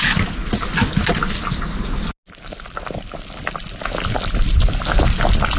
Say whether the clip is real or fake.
real